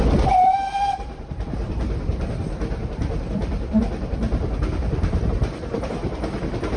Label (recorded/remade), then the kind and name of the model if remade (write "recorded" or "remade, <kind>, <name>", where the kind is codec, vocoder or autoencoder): remade, vocoder, BigVGAN v2